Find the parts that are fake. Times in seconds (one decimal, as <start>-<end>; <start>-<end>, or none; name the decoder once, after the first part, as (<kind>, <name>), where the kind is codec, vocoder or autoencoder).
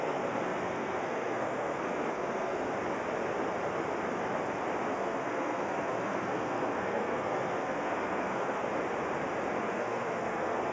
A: 0.0-2.7 (codec, SNAC); 4.9-8.6; 9.6-10.7